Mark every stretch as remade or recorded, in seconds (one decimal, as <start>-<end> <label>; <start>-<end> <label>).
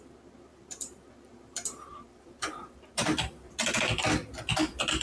0.0-0.5 recorded; 0.5-3.5 remade; 3.5-5.0 recorded